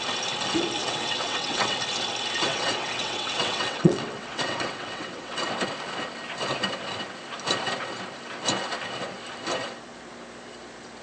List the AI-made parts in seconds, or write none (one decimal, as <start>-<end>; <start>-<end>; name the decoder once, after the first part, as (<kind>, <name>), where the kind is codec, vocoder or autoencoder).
0.8-1.8 (vocoder, WaveNeXt); 2.5-5.4